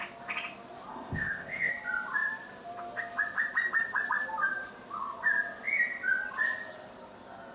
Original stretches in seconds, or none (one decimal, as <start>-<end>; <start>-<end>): 0.0-0.9; 1.7-7.5